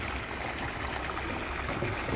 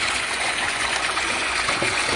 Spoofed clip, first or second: second